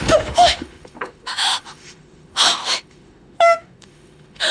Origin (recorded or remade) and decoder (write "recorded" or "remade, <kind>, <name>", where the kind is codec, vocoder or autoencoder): remade, autoencoder, DAC-VAE